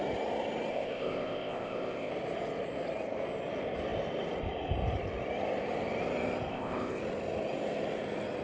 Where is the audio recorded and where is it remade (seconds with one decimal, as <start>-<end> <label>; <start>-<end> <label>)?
0.0-0.7 recorded; 0.7-2.1 remade; 2.1-6.5 recorded; 6.5-7.0 remade; 7.0-8.4 recorded